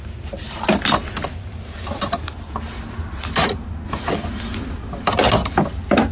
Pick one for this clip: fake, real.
real